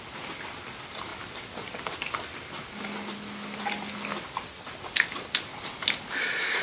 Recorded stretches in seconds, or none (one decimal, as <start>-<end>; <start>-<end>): 0.0-6.6